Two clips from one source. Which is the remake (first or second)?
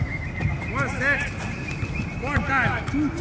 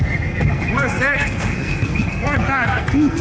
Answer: second